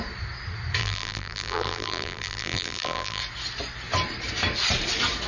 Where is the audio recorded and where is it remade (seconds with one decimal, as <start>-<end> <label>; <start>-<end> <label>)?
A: 0.0-0.8 recorded; 0.8-3.2 remade; 3.2-5.3 recorded